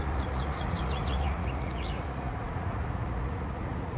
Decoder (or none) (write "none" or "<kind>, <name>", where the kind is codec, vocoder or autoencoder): vocoder, Vocos